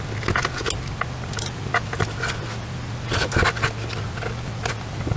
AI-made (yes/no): no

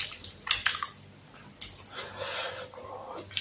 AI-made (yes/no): no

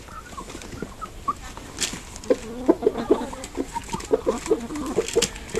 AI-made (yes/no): no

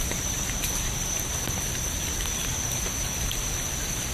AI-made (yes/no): no